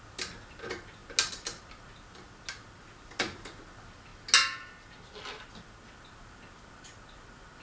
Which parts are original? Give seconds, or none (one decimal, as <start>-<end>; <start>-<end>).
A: 0.0-7.6